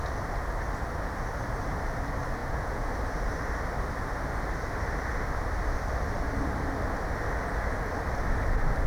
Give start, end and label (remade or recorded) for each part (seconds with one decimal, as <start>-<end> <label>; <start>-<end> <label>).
0.0-2.4 recorded; 2.4-2.9 remade; 2.9-8.9 recorded